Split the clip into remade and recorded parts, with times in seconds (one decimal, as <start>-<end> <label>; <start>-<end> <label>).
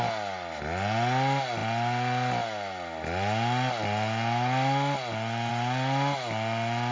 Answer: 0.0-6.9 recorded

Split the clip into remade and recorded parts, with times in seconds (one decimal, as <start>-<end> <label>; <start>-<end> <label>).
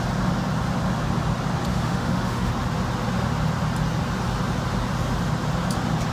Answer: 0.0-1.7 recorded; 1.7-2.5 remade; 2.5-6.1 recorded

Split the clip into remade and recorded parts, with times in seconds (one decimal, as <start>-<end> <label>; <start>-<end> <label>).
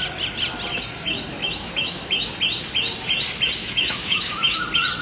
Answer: 0.0-1.4 recorded; 1.4-2.3 remade; 2.3-3.6 recorded; 3.6-4.6 remade; 4.6-5.0 recorded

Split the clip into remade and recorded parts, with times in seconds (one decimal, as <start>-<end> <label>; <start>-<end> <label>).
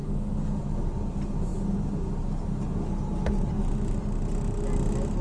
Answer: 0.0-0.6 remade; 0.6-5.2 recorded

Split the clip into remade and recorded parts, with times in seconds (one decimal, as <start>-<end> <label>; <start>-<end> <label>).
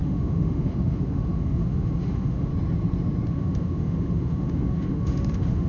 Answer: 0.0-2.5 remade; 2.5-3.3 recorded; 3.3-5.7 remade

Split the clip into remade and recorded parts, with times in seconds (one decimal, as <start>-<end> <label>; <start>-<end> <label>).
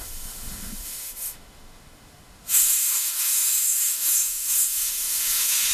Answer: 0.0-5.7 remade